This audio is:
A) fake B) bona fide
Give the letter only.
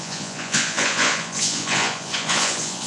A